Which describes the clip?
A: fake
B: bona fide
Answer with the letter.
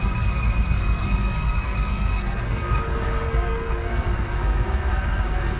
A